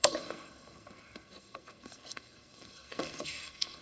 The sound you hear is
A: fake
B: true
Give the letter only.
A